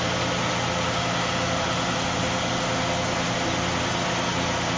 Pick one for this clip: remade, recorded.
recorded